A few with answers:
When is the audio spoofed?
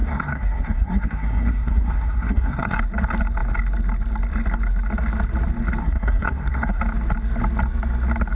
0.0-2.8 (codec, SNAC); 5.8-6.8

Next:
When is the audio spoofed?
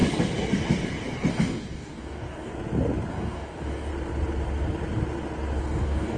1.3-2.5 (codec, DAC); 3.1-3.9; 5.6-6.2